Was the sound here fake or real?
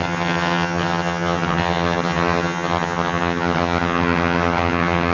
fake